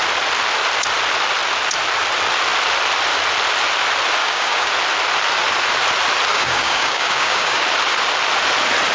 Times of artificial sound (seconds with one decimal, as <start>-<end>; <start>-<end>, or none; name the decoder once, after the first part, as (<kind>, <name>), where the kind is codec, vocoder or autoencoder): 4.2-4.7 (codec, DAC); 6.3-7.6